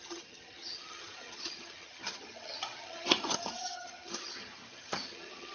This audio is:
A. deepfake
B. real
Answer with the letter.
A